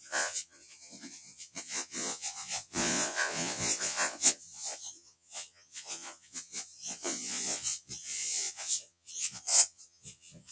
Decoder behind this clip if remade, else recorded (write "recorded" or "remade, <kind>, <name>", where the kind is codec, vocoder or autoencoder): remade, vocoder, Vocos